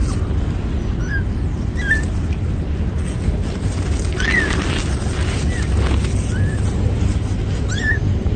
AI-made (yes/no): no